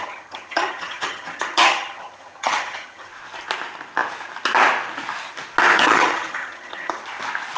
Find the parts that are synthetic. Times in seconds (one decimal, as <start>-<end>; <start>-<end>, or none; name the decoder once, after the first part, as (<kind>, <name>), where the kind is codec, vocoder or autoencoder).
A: 0.0-3.1 (vocoder, HiFi-GAN); 5.8-7.0